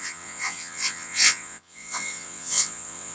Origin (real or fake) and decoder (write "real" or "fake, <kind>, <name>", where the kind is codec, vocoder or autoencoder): fake, vocoder, WaveNeXt